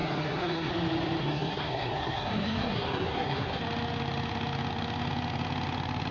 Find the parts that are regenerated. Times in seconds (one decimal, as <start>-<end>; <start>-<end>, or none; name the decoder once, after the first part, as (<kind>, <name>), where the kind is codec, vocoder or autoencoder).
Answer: 0.0-0.7 (codec, SNAC); 1.2-3.6